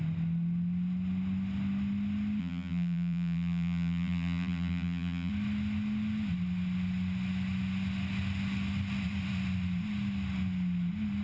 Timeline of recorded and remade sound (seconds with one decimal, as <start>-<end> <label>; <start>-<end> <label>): 0.0-2.4 recorded; 2.4-5.3 remade; 5.3-11.2 recorded